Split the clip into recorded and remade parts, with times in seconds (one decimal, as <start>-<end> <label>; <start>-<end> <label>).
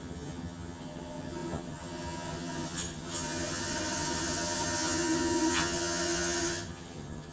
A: 0.0-7.3 remade